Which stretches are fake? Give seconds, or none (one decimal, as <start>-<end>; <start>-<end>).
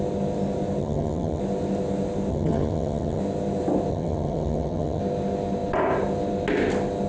0.8-1.4; 2.3-3.2; 3.9-5.0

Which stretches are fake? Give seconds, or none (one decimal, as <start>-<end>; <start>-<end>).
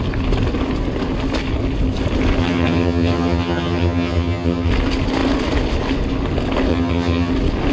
2.4-4.7; 6.7-7.3